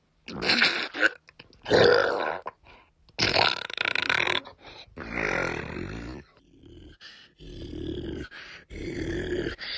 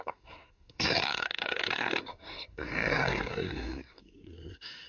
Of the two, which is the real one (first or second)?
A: first